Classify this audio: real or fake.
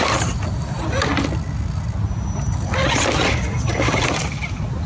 real